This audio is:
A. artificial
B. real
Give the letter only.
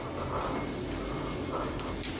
B